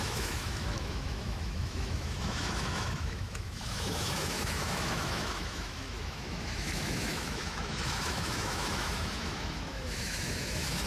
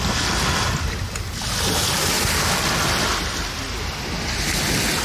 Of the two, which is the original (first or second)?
second